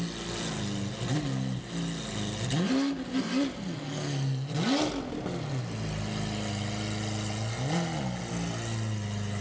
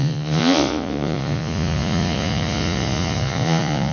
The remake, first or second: second